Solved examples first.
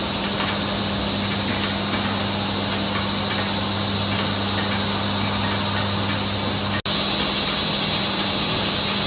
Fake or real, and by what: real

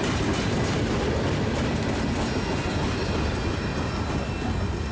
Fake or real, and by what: real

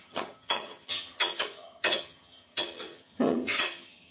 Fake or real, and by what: fake, vocoder, HiFi-GAN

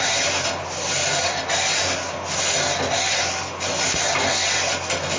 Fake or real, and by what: real